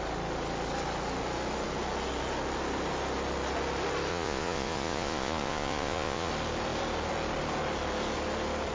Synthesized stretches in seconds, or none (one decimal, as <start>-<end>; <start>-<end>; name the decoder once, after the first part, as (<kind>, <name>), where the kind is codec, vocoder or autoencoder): 4.1-6.3 (vocoder, Vocos)